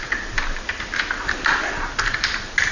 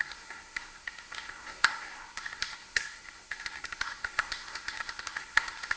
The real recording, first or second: first